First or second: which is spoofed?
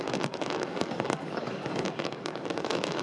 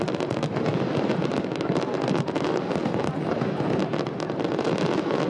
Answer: first